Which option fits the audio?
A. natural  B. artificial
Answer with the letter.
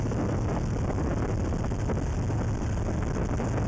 A